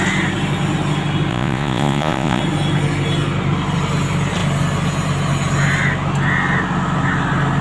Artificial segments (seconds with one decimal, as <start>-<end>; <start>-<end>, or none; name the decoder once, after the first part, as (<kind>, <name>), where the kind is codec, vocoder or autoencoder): 1.3-2.4 (vocoder, Vocos)